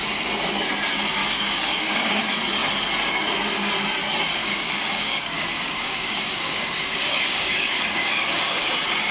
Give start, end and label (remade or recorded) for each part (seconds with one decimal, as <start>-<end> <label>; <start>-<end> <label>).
0.0-1.2 recorded; 1.2-2.2 remade; 2.2-4.4 recorded; 4.4-8.7 remade; 8.7-9.1 recorded